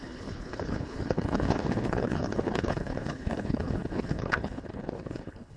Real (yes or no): no